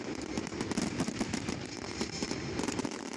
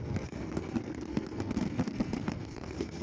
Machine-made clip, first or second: second